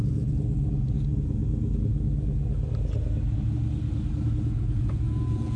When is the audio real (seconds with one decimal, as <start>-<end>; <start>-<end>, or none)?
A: 1.4-4.4